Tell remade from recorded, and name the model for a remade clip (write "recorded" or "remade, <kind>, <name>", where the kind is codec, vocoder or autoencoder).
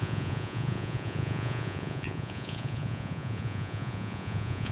remade, vocoder, Vocos